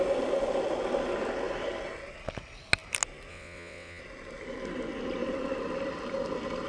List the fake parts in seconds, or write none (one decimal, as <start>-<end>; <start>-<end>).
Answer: 3.3-4.0

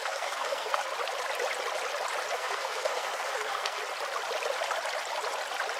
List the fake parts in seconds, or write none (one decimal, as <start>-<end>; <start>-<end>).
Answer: 0.0-0.8; 2.3-3.8

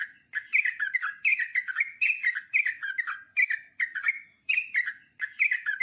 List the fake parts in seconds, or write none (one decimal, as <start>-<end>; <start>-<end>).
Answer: 0.0-5.8

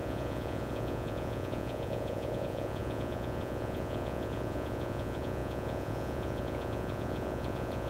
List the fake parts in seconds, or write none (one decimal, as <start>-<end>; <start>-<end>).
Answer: 0.0-7.9

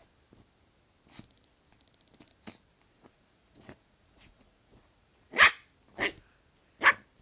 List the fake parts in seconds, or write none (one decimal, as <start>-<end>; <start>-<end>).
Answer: 2.9-5.5

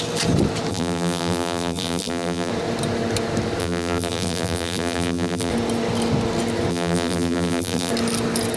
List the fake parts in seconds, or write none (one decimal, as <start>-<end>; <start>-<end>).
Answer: 0.7-2.5; 3.6-5.5; 6.7-7.9

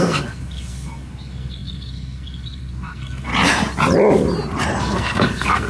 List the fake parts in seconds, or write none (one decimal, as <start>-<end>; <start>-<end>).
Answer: 0.0-3.3; 4.8-5.7